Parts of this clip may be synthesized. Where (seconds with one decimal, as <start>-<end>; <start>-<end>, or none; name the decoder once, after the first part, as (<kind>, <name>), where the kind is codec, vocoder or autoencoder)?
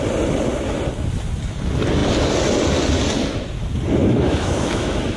4.0-5.2 (autoencoder, DAC-VAE)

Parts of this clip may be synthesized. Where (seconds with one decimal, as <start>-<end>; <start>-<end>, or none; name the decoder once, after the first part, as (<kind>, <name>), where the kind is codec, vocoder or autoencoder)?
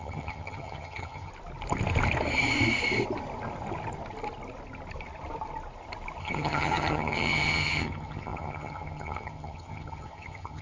0.0-1.3 (vocoder, HiFi-GAN); 6.2-10.6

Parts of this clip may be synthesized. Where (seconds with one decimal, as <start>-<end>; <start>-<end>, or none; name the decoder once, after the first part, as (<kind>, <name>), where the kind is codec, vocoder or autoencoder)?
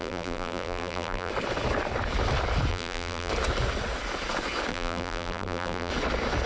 0.0-1.3 (vocoder, BigVGAN v2); 2.7-3.3; 4.7-5.9